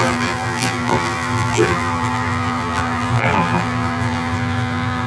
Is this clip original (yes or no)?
no